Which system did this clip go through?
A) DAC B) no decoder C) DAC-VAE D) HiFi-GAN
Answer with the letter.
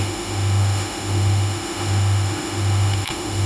C